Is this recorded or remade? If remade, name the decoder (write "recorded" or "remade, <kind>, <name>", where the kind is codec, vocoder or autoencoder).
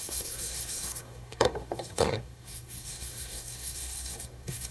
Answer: remade, codec, SNAC